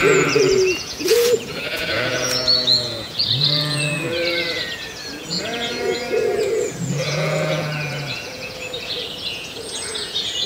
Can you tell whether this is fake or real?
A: fake